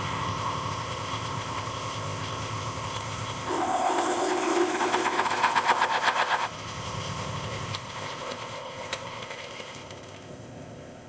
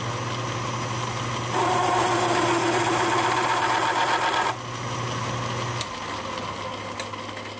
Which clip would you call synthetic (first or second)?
first